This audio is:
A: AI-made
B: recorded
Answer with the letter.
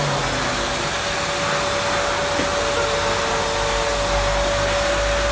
B